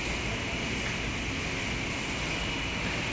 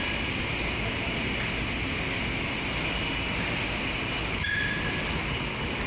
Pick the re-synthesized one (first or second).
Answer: second